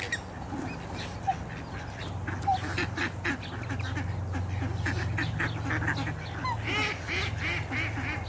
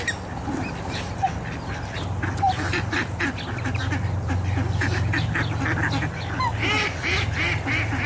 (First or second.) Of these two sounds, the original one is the first